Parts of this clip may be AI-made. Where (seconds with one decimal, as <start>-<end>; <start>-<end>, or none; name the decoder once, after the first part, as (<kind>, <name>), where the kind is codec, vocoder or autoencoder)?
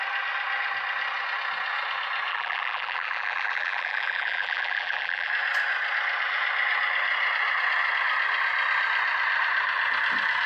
2.3-5.3 (vocoder, BigVGAN v2)